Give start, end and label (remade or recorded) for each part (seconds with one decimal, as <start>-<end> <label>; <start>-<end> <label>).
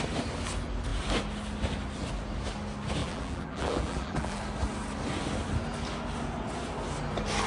0.0-3.0 recorded; 3.0-4.4 remade; 4.4-7.5 recorded